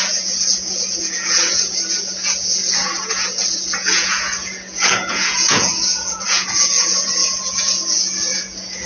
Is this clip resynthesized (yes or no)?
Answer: yes